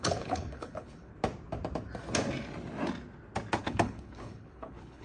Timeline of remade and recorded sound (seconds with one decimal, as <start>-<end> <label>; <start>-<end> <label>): 0.0-1.1 remade; 1.1-3.6 recorded; 3.6-5.0 remade